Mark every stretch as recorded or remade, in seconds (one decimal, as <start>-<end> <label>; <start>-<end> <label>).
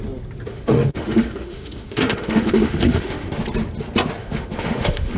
0.0-0.5 recorded; 0.5-3.4 remade; 3.4-4.2 recorded; 4.2-5.2 remade